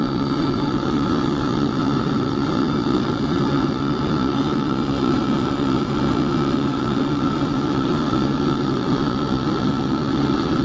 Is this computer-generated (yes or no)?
yes